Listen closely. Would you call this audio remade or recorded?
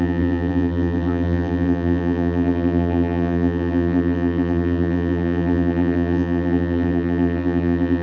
remade